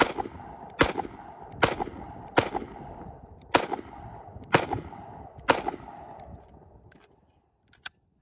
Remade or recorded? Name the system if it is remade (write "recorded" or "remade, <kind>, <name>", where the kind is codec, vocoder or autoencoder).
recorded